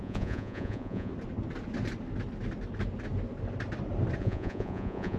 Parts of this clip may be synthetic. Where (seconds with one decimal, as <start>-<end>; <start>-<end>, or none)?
0.0-1.1; 4.2-5.2